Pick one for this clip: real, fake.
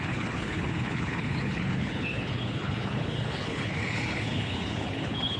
fake